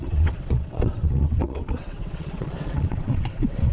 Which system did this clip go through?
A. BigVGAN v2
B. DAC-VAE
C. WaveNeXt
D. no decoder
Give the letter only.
C